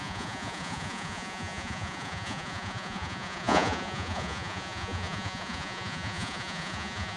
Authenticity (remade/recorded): remade